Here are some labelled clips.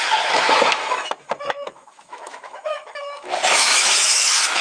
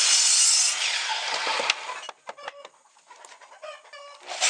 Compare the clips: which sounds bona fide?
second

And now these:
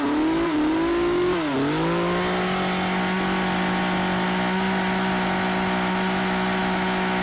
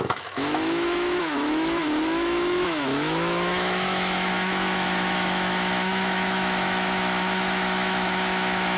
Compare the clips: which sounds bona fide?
first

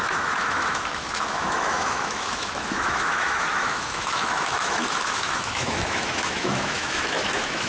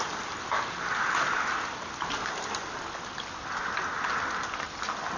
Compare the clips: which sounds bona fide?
second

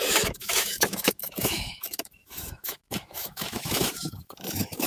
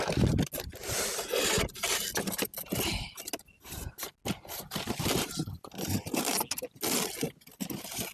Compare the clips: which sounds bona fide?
second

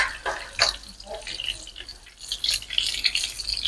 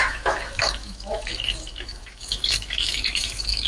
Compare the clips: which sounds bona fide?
first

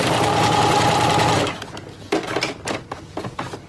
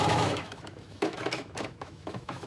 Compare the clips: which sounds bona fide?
first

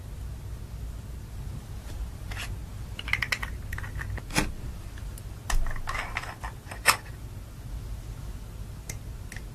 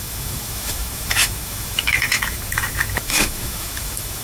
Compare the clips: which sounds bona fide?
first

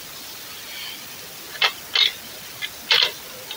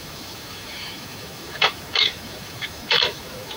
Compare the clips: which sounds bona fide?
first